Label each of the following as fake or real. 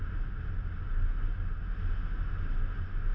real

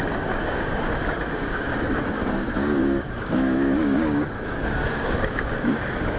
fake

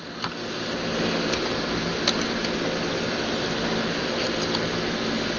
real